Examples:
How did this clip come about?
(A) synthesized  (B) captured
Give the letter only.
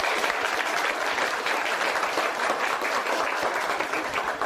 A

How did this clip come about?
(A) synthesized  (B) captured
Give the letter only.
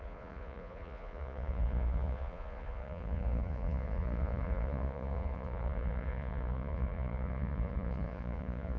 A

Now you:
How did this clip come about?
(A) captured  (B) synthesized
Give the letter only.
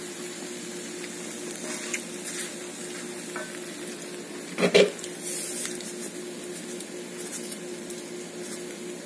A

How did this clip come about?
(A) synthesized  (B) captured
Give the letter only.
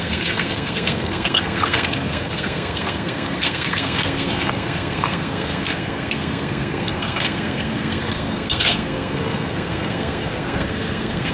A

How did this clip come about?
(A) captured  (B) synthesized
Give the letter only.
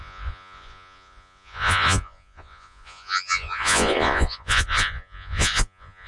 B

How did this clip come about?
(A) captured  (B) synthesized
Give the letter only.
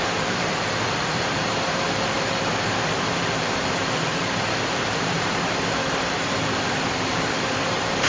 B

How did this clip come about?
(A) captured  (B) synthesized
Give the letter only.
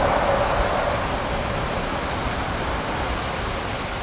A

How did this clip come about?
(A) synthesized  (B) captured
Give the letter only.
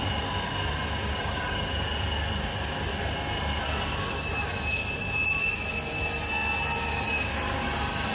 B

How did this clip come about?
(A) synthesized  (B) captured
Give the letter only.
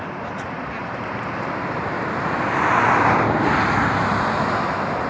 B